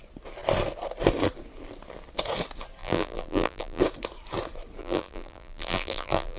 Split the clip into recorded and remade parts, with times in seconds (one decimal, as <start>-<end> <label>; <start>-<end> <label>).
0.0-2.8 recorded; 2.8-3.8 remade; 3.8-4.8 recorded; 4.8-6.4 remade